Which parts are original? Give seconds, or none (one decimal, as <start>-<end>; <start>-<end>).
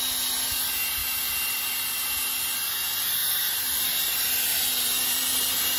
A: 0.0-3.2; 4.1-4.5